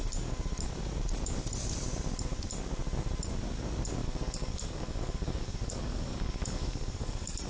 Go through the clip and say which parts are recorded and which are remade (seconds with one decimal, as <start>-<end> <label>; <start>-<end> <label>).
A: 0.0-4.0 recorded; 4.0-7.5 remade